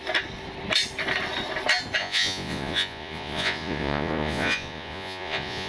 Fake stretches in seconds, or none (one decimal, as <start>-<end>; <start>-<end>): 2.0-5.7